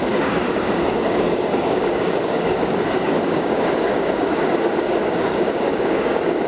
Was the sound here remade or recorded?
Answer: remade